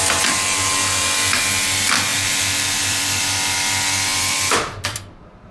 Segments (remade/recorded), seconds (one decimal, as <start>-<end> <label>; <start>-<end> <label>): 0.0-2.1 recorded; 2.1-3.2 remade; 3.2-4.1 recorded; 4.1-5.5 remade